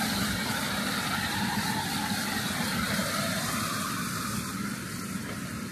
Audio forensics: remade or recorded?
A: recorded